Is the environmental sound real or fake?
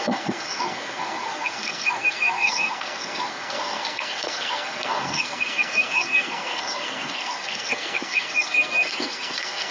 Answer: fake